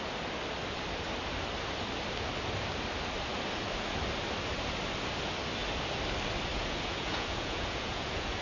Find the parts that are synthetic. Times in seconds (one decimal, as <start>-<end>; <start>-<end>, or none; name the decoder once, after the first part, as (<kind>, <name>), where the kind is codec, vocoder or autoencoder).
6.5-8.4 (vocoder, Vocos)